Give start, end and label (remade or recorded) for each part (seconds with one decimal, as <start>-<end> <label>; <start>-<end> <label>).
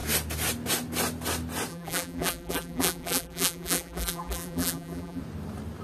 0.0-1.7 recorded; 1.7-5.2 remade; 5.2-5.8 recorded